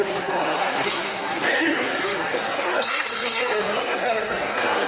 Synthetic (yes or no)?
yes